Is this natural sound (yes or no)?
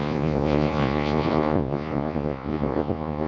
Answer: no